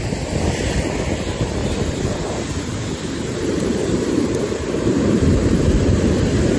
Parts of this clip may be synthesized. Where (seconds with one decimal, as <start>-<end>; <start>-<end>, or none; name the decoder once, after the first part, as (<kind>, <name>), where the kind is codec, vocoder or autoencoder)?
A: 1.6-5.6 (vocoder, BigVGAN v2)